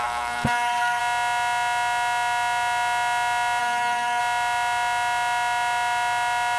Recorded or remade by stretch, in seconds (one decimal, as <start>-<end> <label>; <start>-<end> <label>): 0.0-1.0 remade; 1.0-3.6 recorded; 3.6-4.2 remade; 4.2-6.6 recorded